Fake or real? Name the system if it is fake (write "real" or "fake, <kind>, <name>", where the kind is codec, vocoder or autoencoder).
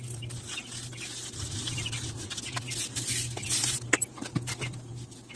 real